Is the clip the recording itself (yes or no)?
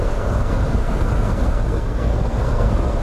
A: no